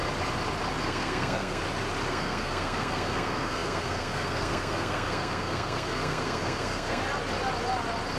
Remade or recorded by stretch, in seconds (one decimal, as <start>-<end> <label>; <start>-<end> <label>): 0.0-0.8 recorded; 0.8-1.6 remade; 1.6-2.1 recorded; 2.1-7.0 remade; 7.0-8.2 recorded